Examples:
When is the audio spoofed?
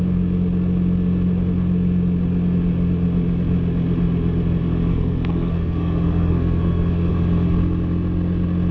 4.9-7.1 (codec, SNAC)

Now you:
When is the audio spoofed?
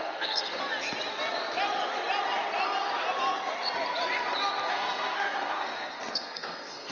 0.0-0.6 (codec, SNAC); 4.7-6.9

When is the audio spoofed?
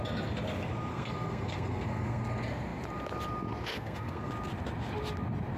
0.9-2.2 (codec, SNAC); 3.7-4.3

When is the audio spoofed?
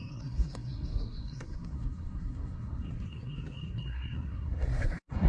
0.0-5.3 (codec, SNAC)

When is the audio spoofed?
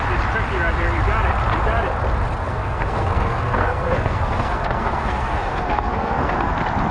2.4-6.5 (codec, SNAC)